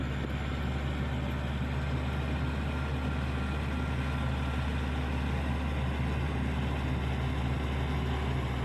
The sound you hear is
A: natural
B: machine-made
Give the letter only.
A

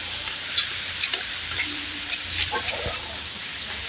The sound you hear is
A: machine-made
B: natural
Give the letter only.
A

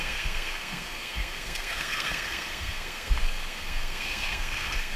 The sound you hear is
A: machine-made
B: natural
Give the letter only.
A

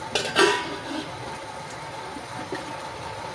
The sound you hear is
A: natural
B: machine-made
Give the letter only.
A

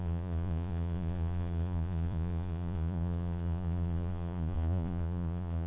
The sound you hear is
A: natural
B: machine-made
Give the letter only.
B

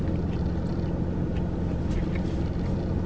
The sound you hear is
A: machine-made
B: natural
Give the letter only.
B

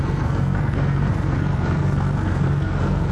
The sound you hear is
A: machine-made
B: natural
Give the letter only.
A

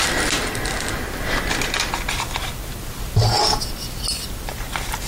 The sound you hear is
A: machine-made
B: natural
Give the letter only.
B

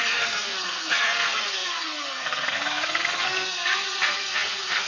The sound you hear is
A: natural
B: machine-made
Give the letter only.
B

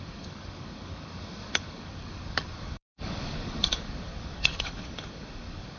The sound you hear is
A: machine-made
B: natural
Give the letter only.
A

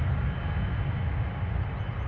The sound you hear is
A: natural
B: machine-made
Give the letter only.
A